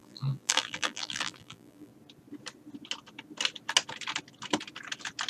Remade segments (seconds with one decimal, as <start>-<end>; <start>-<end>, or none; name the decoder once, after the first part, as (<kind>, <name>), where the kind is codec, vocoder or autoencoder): 0.0-1.9 (vocoder, BigVGAN v2)